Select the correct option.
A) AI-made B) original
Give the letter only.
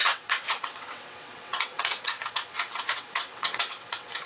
A